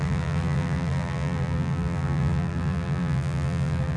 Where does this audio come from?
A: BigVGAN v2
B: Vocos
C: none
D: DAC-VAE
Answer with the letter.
A